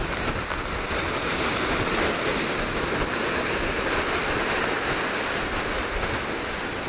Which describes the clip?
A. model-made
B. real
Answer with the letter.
B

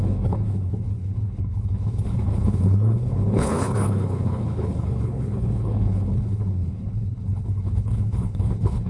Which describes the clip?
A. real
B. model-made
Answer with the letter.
B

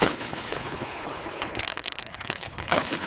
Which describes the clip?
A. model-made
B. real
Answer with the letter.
A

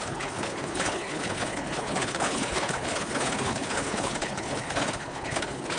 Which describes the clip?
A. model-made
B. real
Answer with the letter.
A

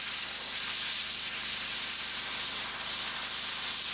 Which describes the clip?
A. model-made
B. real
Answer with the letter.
B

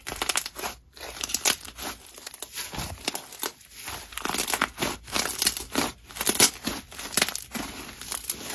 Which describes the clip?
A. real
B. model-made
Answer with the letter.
A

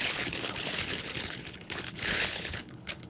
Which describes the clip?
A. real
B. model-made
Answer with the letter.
B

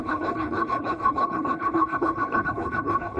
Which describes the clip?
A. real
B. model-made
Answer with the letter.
B